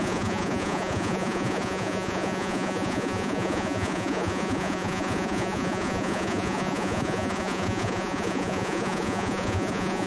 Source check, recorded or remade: remade